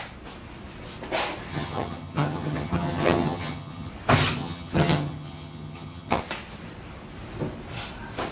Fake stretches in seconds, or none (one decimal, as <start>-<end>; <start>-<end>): 1.5-3.9; 4.4-6.2

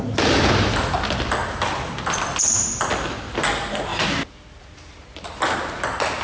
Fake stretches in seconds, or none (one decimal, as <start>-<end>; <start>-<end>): none

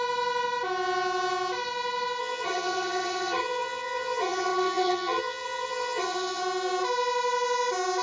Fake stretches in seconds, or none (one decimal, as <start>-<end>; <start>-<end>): 2.2-6.4

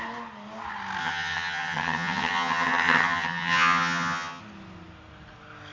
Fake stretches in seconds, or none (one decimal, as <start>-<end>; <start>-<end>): 1.0-4.4

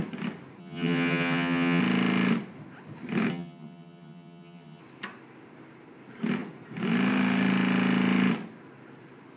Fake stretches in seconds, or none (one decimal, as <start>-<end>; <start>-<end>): 0.6-1.8; 3.3-4.8

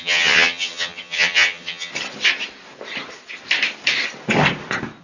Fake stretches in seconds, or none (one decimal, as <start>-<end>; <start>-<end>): 0.0-1.9

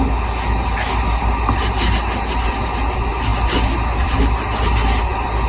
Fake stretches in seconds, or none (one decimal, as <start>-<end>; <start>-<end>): none

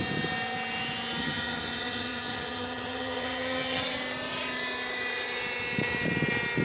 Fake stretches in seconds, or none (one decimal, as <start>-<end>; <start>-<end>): 1.2-3.8